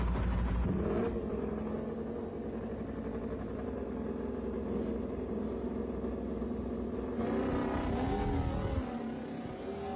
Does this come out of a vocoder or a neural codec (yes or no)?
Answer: no